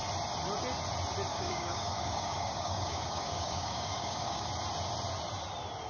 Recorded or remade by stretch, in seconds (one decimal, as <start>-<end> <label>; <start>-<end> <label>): 0.0-1.3 recorded; 1.3-4.5 remade; 4.5-5.9 recorded